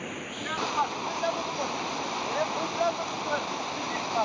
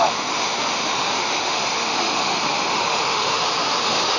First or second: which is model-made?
second